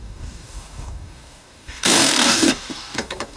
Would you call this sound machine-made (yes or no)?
yes